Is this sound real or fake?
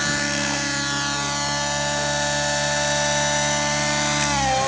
real